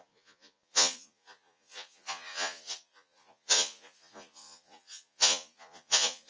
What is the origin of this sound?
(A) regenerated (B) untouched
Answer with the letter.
A